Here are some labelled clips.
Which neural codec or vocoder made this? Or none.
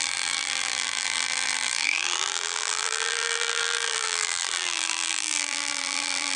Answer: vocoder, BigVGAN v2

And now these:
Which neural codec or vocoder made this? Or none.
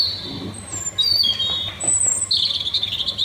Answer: none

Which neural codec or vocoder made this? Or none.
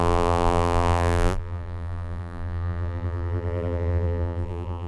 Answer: vocoder, BigVGAN v2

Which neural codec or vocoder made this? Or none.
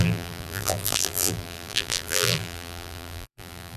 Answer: vocoder, BigVGAN v2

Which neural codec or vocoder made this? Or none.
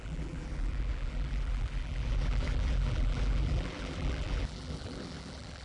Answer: vocoder, BigVGAN v2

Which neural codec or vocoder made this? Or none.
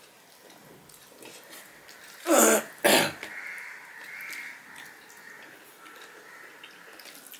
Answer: none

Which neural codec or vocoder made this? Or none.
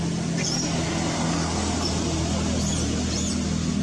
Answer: none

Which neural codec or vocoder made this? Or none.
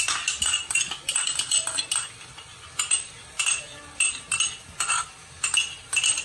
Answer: none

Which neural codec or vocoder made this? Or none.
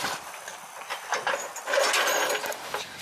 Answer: none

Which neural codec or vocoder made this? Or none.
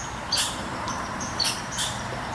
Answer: vocoder, BigVGAN v2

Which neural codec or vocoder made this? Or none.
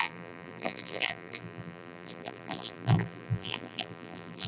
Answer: vocoder, BigVGAN v2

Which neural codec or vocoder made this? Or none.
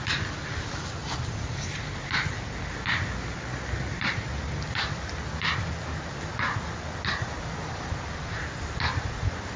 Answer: none